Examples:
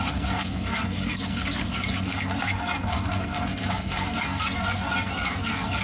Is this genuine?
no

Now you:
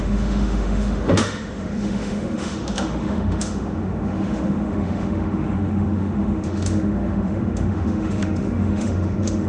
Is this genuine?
no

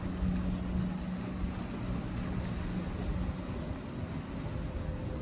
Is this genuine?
yes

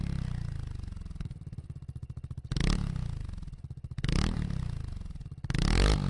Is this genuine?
yes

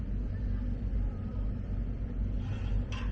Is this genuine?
yes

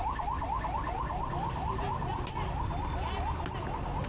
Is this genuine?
yes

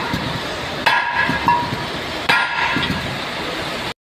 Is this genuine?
yes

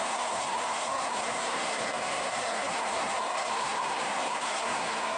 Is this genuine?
no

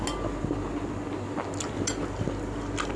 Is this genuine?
yes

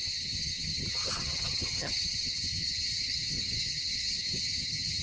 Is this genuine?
no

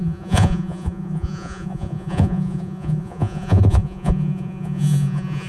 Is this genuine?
no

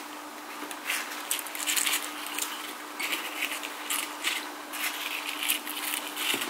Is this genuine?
yes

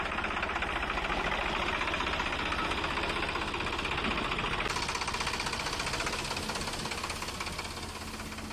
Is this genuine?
yes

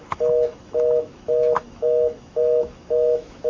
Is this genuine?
no